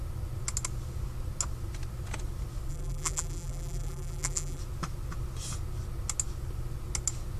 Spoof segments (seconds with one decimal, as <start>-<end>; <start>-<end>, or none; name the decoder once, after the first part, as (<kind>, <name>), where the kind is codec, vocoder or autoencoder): 2.7-4.6 (vocoder, BigVGAN v2)